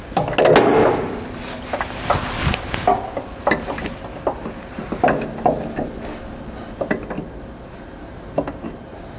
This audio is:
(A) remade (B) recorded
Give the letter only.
B